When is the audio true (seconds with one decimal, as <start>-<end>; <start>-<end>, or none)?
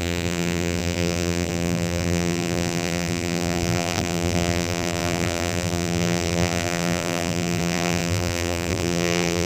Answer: none